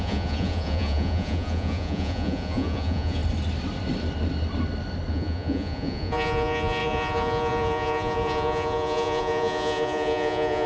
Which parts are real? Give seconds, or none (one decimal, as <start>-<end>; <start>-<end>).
3.2-5.1